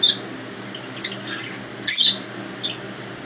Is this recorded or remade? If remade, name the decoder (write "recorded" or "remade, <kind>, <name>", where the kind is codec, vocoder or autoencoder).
recorded